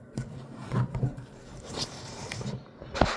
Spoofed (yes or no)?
yes